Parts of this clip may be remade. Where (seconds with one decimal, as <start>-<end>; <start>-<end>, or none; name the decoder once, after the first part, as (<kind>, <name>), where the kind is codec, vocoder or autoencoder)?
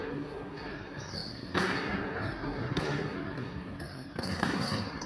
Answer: 0.0-5.1 (codec, SNAC)